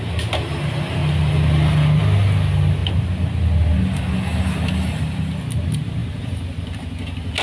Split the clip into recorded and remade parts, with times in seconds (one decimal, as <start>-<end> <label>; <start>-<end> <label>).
0.0-7.4 recorded